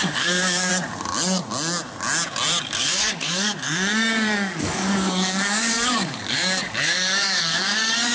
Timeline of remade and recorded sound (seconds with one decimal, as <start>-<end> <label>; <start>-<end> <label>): 0.0-0.7 remade; 0.7-2.6 recorded; 2.6-8.1 remade